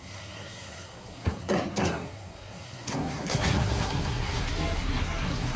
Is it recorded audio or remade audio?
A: remade